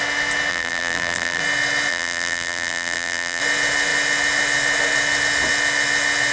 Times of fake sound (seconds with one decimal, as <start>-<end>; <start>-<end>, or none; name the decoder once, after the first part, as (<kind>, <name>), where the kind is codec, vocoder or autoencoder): 0.5-1.4 (vocoder, BigVGAN v2); 1.9-3.4